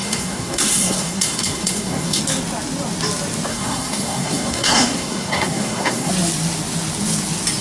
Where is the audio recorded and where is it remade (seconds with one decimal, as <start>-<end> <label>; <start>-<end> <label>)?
0.0-2.2 remade; 2.2-3.5 recorded; 3.5-6.1 remade; 6.1-7.6 recorded

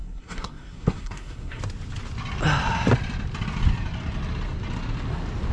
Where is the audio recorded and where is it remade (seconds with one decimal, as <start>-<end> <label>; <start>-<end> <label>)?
0.0-1.6 remade; 1.6-5.5 recorded

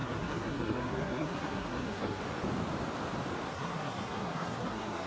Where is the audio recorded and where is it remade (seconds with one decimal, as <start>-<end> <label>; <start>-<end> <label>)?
0.0-2.2 remade; 2.2-3.5 recorded; 3.5-5.1 remade

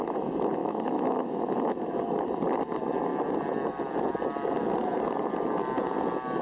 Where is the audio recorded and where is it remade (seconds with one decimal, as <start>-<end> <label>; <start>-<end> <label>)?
0.0-0.6 recorded; 0.6-1.9 remade; 1.9-6.4 recorded

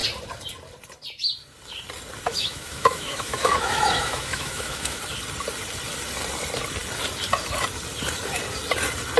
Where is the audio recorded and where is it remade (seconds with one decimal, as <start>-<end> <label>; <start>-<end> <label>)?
0.0-2.3 recorded; 2.3-5.0 remade; 5.0-9.2 recorded

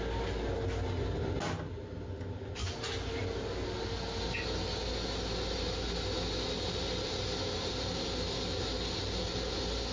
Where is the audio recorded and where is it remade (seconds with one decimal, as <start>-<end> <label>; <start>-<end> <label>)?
0.0-9.9 recorded

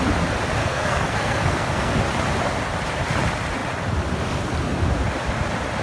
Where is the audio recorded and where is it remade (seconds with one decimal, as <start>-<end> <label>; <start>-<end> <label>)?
0.0-0.6 recorded; 0.6-2.0 remade; 2.0-5.8 recorded